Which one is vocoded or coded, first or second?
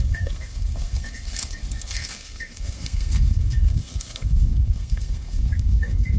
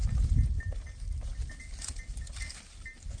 first